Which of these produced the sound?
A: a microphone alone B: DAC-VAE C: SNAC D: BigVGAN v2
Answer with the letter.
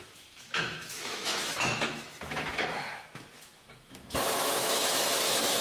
B